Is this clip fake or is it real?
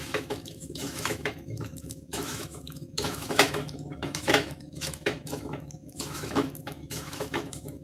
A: fake